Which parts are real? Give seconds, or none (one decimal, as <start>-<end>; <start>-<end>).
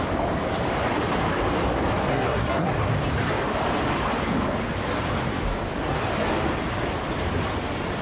0.0-2.1; 2.7-8.0